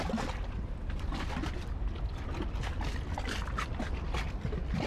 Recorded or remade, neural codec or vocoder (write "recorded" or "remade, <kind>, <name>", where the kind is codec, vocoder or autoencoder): recorded